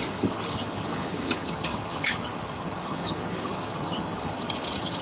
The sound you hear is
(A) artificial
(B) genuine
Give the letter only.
A